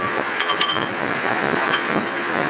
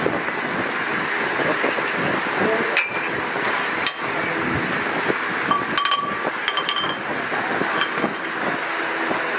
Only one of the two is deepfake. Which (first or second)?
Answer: first